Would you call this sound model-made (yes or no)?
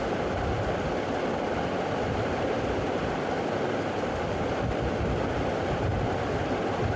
no